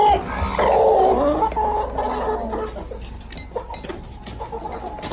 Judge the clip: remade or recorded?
recorded